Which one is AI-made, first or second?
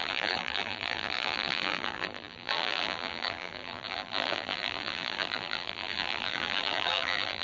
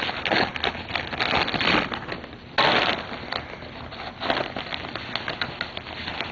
first